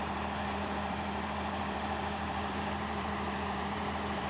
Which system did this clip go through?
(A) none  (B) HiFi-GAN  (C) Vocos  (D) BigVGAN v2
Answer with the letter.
D